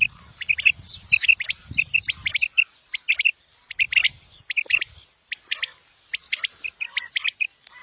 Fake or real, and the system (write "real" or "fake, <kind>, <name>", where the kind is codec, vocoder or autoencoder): real